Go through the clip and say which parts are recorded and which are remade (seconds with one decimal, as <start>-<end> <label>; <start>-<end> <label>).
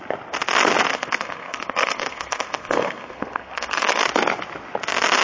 0.0-0.9 recorded; 0.9-4.0 remade; 4.0-5.2 recorded